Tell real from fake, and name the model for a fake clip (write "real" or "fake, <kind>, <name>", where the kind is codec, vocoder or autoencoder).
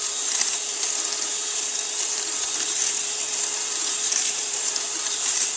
fake, vocoder, BigVGAN v2